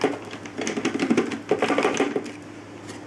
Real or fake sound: real